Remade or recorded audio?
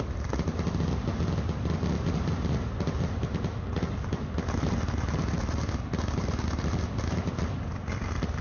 recorded